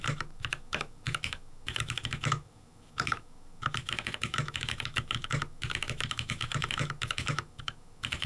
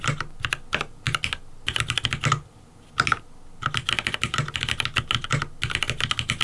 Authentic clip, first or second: second